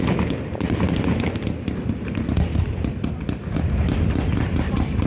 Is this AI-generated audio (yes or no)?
no